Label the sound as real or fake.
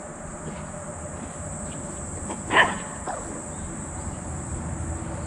real